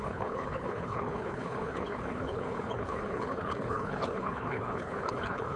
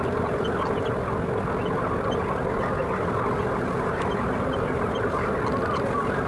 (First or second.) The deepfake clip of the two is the first